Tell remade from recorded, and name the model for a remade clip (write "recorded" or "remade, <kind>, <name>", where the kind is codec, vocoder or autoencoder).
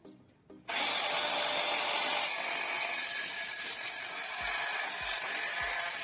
recorded